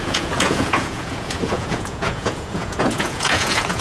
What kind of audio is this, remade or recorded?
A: remade